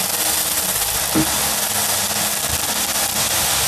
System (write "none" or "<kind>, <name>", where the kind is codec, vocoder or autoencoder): none